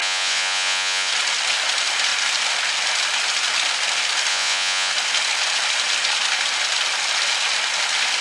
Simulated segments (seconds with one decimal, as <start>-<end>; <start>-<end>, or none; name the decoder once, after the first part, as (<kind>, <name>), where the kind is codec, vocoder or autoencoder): 0.0-1.1 (vocoder, Vocos); 4.3-4.9